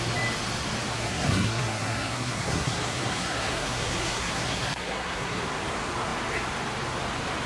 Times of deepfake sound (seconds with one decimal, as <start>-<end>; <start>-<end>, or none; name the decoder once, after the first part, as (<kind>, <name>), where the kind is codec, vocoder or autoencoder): 0.9-5.4 (codec, SNAC)